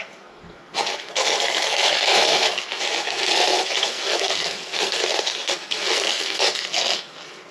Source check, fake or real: fake